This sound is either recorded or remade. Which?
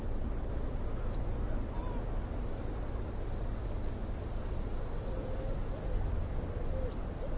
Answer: recorded